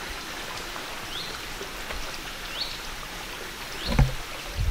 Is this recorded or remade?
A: recorded